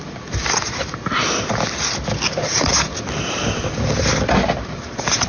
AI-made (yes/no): no